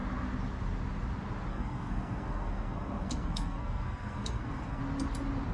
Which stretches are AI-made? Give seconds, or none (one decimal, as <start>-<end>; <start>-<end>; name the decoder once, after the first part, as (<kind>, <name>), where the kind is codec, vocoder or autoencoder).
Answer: 1.5-4.8 (codec, SNAC)